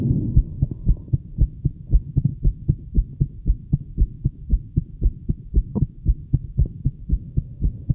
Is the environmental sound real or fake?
fake